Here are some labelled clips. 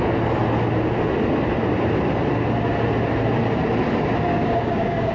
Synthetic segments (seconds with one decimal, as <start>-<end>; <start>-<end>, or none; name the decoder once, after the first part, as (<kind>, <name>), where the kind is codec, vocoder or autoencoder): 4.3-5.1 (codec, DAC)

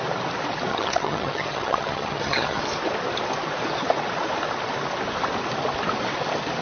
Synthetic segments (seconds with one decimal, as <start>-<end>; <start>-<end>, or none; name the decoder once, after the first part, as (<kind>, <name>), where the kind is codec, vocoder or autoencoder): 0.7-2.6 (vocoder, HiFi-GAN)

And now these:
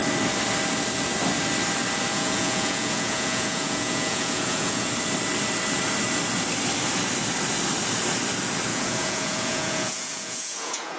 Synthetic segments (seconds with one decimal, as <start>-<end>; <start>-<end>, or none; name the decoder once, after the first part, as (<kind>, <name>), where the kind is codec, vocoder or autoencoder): 2.1-4.9 (vocoder, Vocos); 8.7-11.0

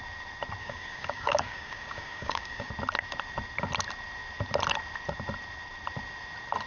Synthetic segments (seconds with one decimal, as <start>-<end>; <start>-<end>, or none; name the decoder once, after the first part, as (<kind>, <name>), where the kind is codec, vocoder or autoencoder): 0.6-2.7 (codec, DAC)